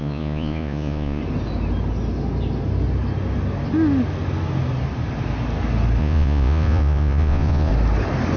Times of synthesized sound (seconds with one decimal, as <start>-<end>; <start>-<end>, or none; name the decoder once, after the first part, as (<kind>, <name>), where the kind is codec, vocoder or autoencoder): 0.0-1.2 (vocoder, Vocos); 6.0-7.7